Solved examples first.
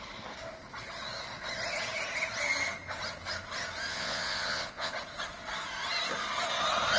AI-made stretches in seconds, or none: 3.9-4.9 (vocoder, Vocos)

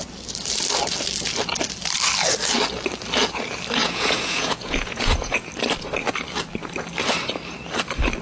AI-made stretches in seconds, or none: 3.8-5.5 (vocoder, Vocos)

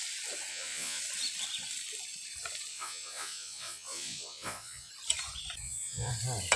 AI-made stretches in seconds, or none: 0.5-1.0 (vocoder, Vocos); 2.7-4.9; 5.6-6.1

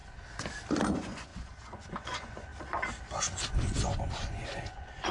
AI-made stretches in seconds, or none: 0.9-2.5 (vocoder, Vocos); 3.4-5.1

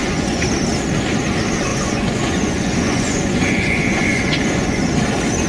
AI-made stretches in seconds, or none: 0.0-0.5 (vocoder, Vocos); 1.7-4.8